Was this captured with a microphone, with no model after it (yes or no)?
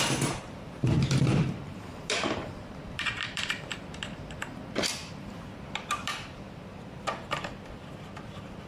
no